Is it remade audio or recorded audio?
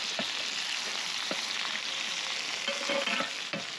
recorded